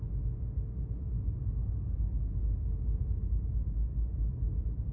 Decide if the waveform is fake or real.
real